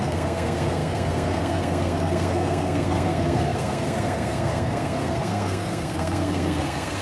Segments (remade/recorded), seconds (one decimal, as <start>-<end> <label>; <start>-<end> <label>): 0.0-7.0 remade